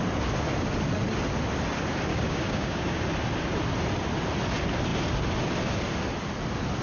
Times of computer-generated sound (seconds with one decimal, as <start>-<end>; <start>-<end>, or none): 2.1-3.0